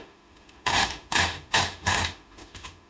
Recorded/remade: remade